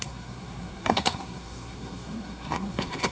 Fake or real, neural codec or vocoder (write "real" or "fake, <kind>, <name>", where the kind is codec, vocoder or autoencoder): fake, codec, SNAC